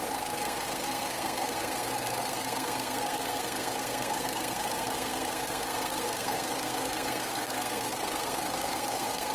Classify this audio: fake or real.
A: fake